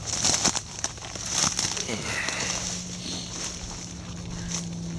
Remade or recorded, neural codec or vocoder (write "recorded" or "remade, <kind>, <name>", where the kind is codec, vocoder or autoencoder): recorded